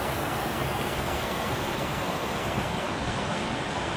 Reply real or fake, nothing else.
fake